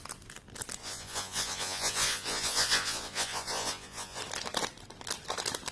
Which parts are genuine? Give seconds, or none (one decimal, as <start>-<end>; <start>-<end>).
0.0-0.8; 4.2-5.7